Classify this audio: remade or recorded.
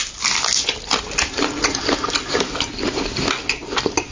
recorded